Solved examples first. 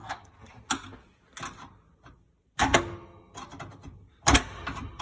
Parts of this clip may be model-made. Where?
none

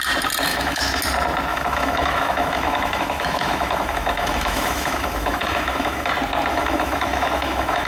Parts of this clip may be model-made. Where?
0.5-1.0 (autoencoder, DAC-VAE); 1.5-6.1; 6.5-7.9